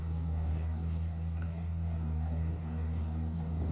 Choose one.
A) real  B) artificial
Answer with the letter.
B